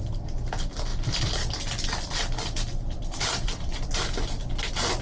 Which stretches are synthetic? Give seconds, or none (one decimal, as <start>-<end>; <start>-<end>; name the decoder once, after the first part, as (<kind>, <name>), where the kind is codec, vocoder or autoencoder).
none